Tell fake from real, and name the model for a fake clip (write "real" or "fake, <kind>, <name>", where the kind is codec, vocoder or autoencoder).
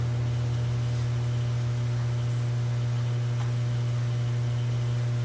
real